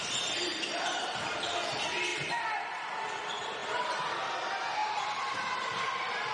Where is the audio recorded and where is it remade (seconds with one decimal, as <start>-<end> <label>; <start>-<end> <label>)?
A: 0.0-0.5 recorded; 0.5-1.4 remade; 1.4-2.1 recorded; 2.1-2.8 remade; 2.8-3.6 recorded; 3.6-4.3 remade; 4.3-4.8 recorded; 4.8-6.3 remade